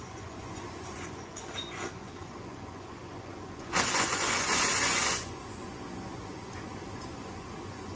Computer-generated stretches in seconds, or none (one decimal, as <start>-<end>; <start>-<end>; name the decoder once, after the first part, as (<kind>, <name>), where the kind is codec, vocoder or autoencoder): 0.0-8.0 (vocoder, Vocos)